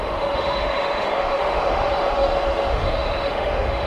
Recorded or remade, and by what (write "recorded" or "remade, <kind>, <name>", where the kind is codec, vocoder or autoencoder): remade, autoencoder, DAC-VAE